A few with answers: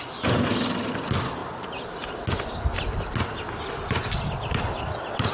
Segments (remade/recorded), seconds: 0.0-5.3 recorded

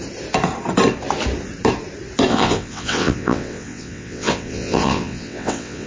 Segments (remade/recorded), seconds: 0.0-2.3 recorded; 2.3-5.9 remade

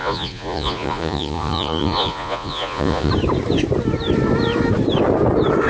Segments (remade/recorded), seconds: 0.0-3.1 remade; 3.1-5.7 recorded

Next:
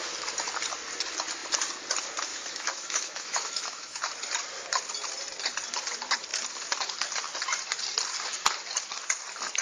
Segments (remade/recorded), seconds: 0.0-2.3 recorded; 2.3-4.0 remade; 4.0-9.6 recorded

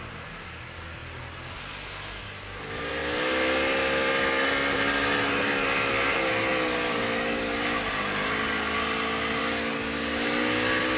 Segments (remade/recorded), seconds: 0.0-11.0 recorded

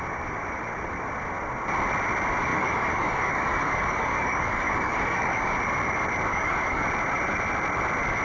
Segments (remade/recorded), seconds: 0.0-2.5 recorded; 2.5-5.5 remade; 5.5-6.3 recorded; 6.3-6.8 remade; 6.8-8.2 recorded

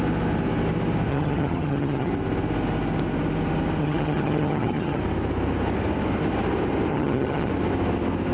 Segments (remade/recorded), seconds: 0.0-1.1 recorded; 1.1-2.1 remade; 2.1-3.8 recorded; 3.8-5.0 remade; 5.0-6.9 recorded; 6.9-7.5 remade; 7.5-8.3 recorded

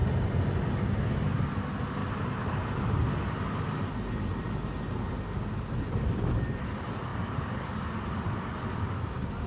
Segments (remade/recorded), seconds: 0.0-0.8 remade; 0.8-2.0 recorded; 2.0-2.5 remade; 2.5-9.5 recorded